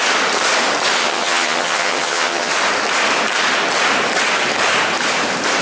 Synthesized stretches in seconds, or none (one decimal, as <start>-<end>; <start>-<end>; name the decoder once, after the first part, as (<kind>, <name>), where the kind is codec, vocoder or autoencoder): 1.0-2.5 (vocoder, HiFi-GAN)

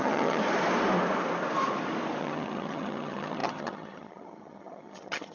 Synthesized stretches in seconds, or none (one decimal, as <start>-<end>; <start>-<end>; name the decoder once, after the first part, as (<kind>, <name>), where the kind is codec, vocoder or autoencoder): 0.0-0.4 (vocoder, HiFi-GAN); 2.2-5.3